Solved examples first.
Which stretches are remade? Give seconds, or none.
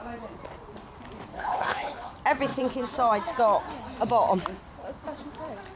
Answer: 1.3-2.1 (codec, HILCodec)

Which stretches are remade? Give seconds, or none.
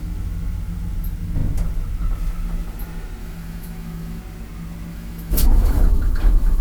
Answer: 3.2-4.2 (autoencoder, DAC-VAE); 4.9-6.6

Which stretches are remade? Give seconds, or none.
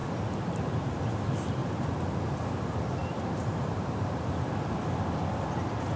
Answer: 0.0-0.9 (vocoder, BigVGAN v2); 1.6-2.6; 3.0-4.1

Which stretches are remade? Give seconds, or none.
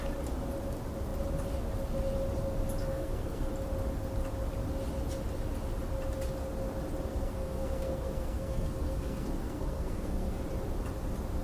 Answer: 2.8-3.5 (codec, SNAC); 7.1-10.4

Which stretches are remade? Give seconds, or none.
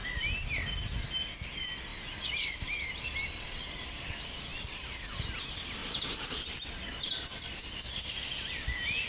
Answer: 1.9-4.1 (vocoder, BigVGAN v2); 4.5-5.1; 5.8-7.8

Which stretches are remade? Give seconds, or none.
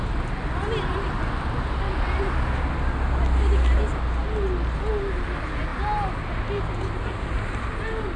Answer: none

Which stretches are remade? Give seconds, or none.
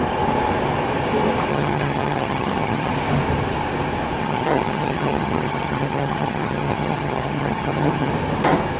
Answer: 1.5-2.9 (vocoder, HiFi-GAN); 4.2-8.1